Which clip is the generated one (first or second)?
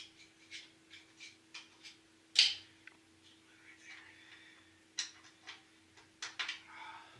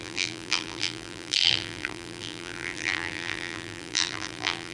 second